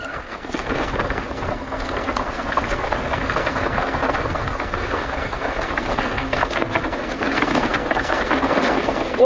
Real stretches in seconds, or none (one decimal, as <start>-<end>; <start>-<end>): none